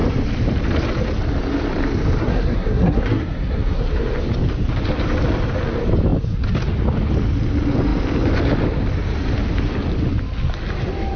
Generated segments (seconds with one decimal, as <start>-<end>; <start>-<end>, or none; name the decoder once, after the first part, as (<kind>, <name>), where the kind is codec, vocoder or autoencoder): 2.2-3.9 (codec, SNAC)